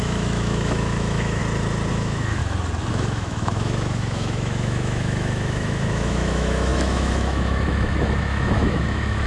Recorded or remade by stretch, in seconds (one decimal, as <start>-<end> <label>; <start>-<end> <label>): 0.0-1.4 remade; 1.4-1.9 recorded; 1.9-2.4 remade; 2.4-2.9 recorded; 2.9-9.3 remade